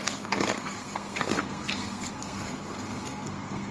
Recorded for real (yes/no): no